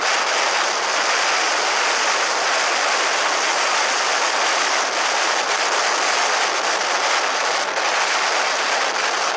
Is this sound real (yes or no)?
yes